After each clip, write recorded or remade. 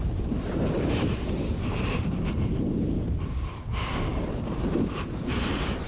remade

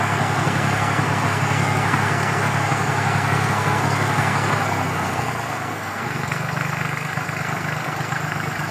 remade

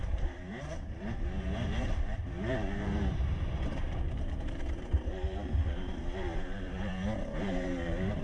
remade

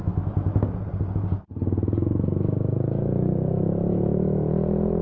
recorded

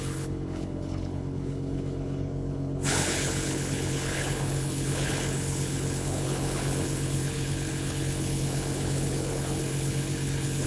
remade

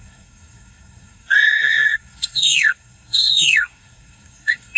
remade